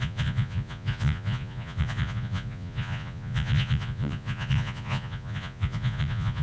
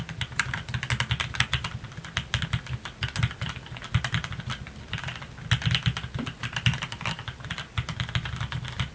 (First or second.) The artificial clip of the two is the first